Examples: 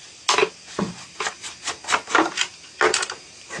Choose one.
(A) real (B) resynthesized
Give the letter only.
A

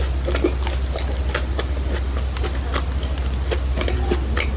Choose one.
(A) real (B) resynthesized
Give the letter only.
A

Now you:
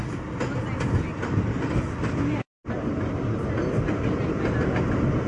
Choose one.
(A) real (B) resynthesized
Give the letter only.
A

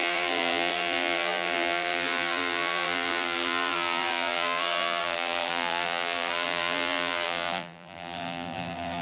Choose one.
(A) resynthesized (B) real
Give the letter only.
A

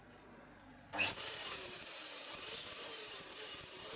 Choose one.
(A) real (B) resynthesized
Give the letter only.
B